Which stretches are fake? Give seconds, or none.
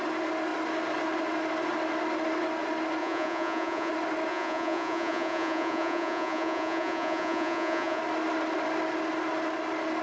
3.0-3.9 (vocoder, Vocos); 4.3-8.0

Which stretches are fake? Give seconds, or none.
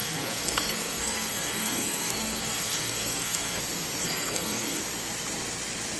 0.0-3.6 (codec, SNAC); 4.0-4.8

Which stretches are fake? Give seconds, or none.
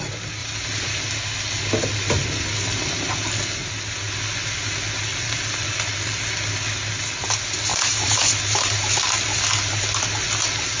0.4-1.0 (vocoder, BigVGAN v2); 5.1-6.3; 7.7-8.3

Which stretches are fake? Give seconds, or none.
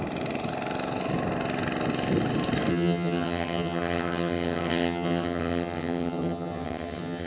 2.7-7.3 (vocoder, HiFi-GAN)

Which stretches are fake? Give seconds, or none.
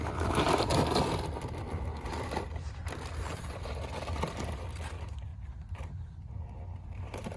5.3-7.4 (vocoder, BigVGAN v2)